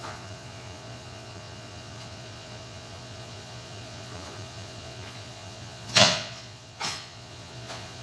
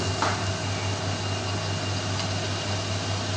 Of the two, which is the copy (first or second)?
first